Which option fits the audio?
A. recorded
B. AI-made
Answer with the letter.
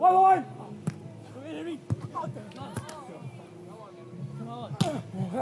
A